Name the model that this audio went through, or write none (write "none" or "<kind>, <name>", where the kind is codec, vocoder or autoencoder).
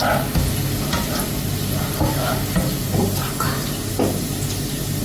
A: none